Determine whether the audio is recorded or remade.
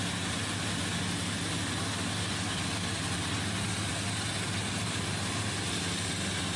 recorded